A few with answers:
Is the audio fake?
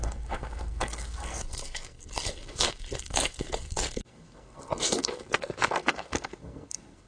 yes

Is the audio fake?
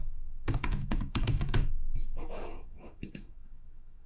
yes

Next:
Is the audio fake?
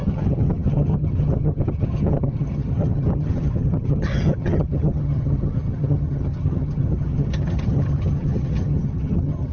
yes